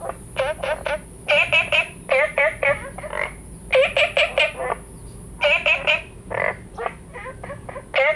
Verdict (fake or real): real